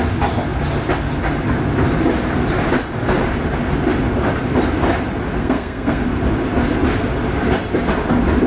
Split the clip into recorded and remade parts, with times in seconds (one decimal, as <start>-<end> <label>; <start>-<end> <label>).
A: 0.0-5.4 recorded; 5.4-6.0 remade; 6.0-8.5 recorded